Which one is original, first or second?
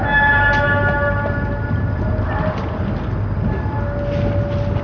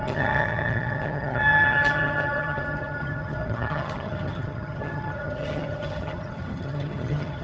first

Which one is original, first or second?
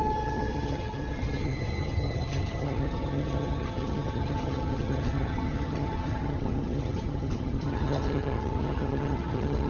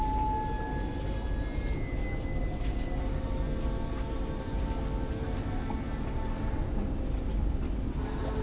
second